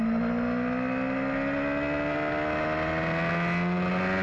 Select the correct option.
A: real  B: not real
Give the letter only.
A